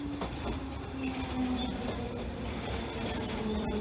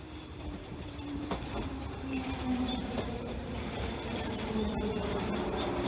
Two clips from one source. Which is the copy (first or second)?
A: second